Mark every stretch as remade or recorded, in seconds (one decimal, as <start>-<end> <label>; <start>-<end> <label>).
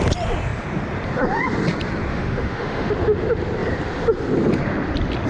0.0-2.1 recorded; 2.1-2.9 remade; 2.9-5.3 recorded